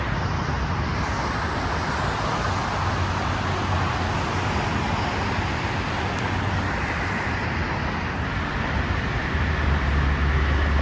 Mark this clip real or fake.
real